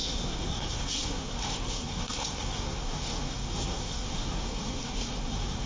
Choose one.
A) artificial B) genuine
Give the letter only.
A